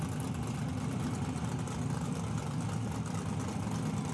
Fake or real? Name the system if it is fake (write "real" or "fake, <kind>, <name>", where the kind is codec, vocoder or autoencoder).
real